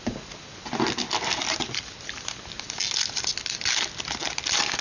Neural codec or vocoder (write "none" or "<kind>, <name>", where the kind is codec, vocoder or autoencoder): none